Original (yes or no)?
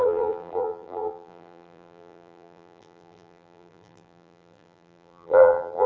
no